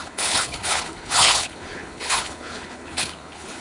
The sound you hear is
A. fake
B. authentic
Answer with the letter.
A